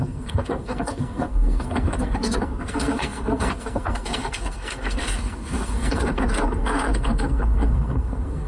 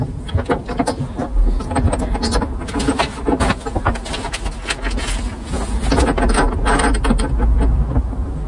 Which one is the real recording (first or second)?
second